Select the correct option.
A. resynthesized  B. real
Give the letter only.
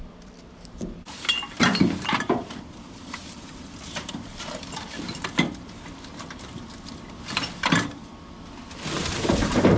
A